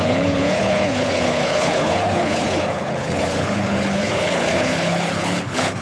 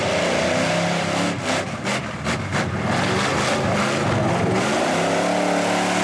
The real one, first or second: second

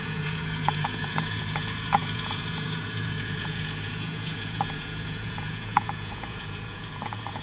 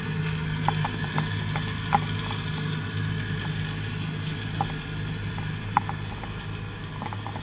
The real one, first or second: second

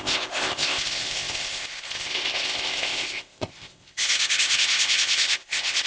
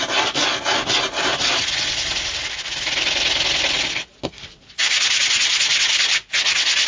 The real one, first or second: second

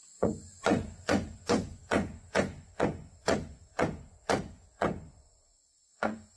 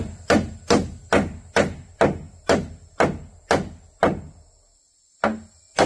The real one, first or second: second